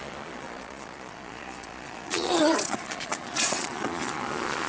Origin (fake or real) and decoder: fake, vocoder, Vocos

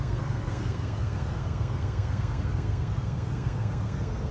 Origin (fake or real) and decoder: fake, codec, SNAC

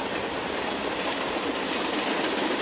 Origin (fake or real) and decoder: real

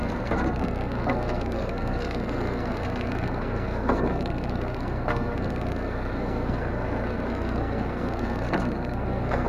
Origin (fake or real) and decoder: fake, codec, SNAC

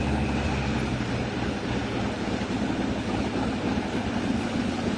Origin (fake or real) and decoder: real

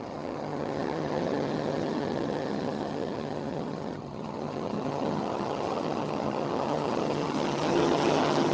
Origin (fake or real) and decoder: fake, vocoder, HiFi-GAN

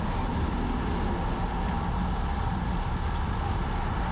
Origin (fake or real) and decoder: real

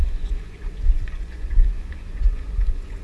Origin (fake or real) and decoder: fake, vocoder, Vocos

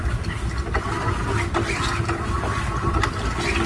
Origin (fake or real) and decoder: real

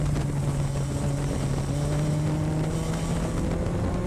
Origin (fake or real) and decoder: real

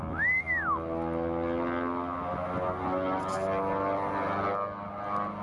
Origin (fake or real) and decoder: real